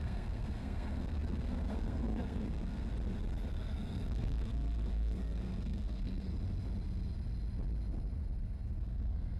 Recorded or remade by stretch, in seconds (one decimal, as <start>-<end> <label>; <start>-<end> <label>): 0.0-2.9 remade; 2.9-3.5 recorded; 3.5-6.3 remade; 6.3-8.8 recorded; 8.8-9.4 remade